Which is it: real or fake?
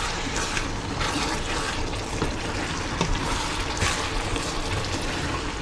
real